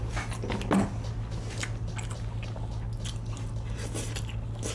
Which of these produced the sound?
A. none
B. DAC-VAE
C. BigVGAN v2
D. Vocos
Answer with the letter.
A